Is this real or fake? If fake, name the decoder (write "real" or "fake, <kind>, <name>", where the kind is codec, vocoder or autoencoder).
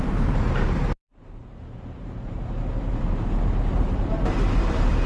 fake, vocoder, BigVGAN v2